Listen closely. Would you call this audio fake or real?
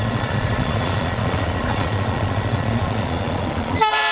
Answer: fake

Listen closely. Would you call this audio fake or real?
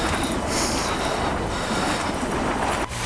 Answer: real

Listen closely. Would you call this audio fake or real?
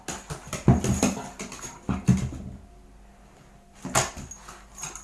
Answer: real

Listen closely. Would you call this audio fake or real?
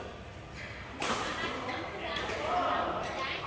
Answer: real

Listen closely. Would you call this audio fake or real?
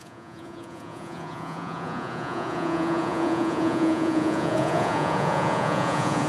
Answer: fake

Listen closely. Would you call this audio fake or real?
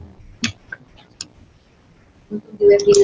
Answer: real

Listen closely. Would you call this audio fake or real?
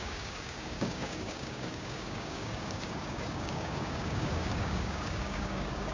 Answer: fake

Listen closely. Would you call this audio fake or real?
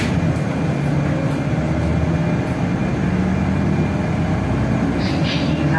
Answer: real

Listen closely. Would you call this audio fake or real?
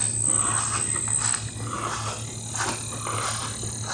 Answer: real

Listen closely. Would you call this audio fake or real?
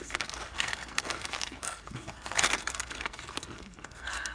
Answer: fake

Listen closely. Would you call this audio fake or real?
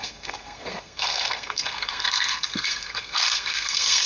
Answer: fake